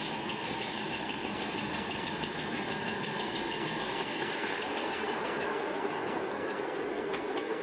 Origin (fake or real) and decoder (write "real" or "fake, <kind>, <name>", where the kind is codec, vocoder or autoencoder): fake, codec, SNAC